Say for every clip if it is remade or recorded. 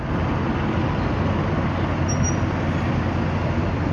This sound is recorded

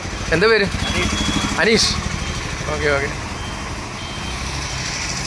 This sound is recorded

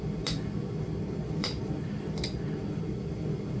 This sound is recorded